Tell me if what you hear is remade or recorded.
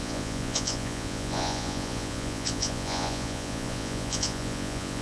remade